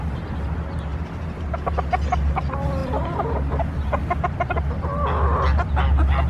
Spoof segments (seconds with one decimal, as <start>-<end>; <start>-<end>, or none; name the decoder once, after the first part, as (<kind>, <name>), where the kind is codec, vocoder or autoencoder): none